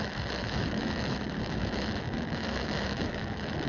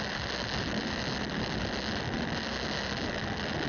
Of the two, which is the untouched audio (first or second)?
second